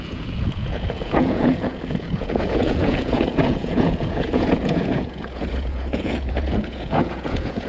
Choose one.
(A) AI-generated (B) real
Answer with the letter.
A